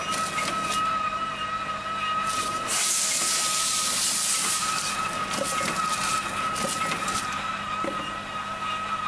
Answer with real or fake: real